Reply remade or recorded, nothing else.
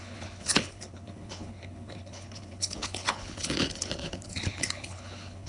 remade